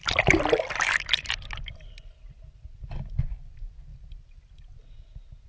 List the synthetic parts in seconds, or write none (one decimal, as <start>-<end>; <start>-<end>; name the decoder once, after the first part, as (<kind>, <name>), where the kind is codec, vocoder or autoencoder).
none